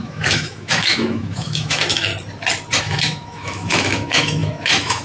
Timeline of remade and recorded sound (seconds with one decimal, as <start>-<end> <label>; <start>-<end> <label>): 0.0-2.1 remade; 2.1-2.8 recorded; 2.8-5.0 remade